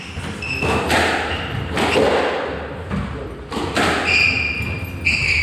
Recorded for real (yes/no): yes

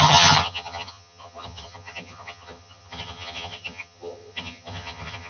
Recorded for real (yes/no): no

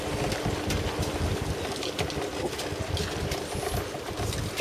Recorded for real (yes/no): yes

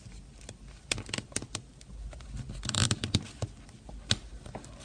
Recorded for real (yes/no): yes